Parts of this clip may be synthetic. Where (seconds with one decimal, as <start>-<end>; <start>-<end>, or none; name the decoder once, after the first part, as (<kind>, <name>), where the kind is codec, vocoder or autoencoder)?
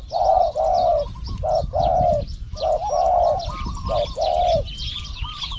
none